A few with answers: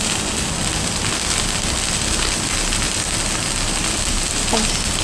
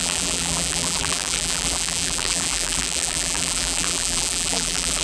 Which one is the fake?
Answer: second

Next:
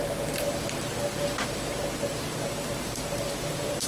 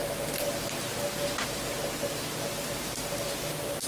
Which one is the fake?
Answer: first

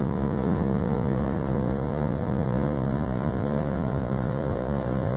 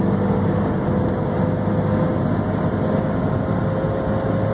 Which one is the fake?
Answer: first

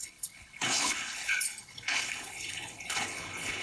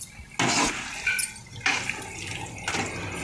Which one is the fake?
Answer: first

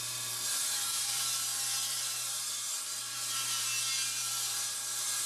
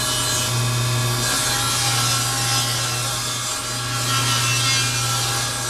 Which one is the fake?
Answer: first